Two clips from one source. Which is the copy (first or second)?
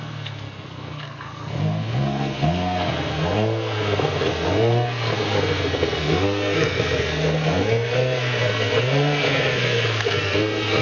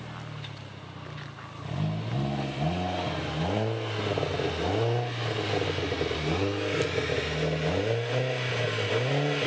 first